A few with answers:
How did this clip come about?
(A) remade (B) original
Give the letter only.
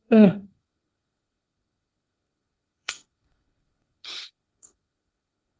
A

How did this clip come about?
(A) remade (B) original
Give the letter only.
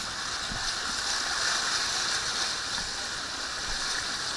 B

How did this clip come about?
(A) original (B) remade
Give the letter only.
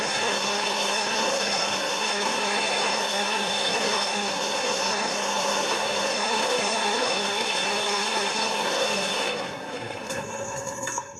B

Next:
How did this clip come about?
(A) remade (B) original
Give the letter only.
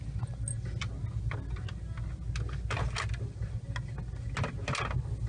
B